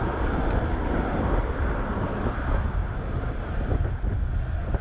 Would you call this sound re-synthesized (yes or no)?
no